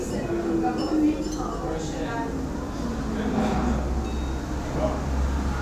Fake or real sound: real